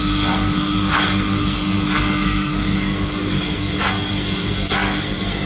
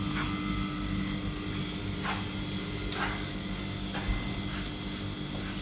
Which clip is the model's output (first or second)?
first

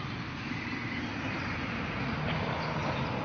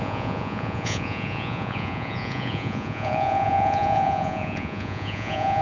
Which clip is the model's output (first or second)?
second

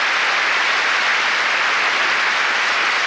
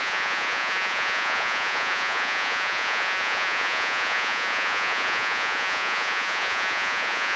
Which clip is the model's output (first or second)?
second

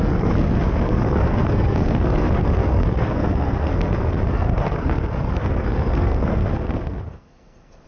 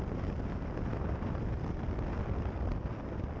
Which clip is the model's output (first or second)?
first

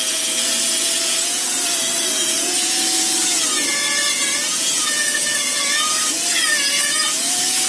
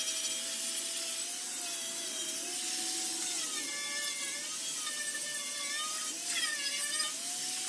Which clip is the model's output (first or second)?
first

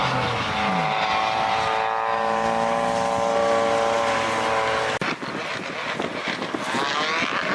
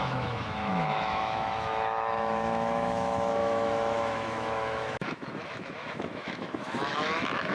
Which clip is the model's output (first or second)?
second